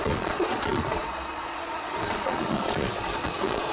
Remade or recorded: remade